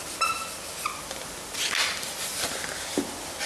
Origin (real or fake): real